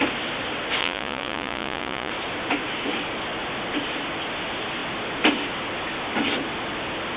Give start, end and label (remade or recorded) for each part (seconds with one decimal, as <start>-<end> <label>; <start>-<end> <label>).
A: 0.0-0.8 recorded; 0.8-2.1 remade; 2.1-7.2 recorded